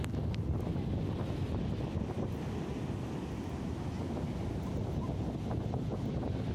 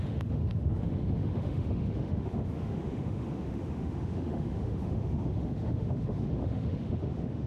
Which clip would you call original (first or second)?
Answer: first